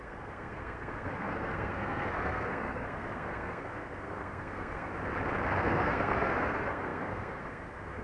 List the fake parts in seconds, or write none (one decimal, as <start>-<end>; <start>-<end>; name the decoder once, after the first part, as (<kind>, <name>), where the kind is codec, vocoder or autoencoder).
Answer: 0.0-4.9 (codec, SNAC); 5.6-8.0